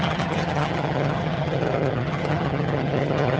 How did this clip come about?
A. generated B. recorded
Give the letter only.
A